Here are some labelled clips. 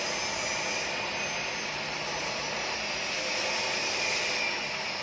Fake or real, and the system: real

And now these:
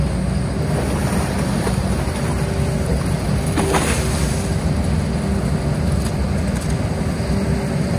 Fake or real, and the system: real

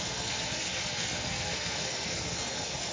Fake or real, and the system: fake, codec, SNAC